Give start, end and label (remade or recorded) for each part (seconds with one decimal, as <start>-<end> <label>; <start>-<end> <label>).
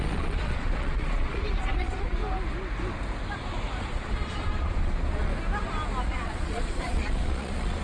0.0-2.2 remade; 2.2-3.8 recorded; 3.8-5.3 remade; 5.3-6.0 recorded; 6.0-7.8 remade